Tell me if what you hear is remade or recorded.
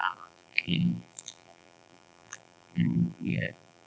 remade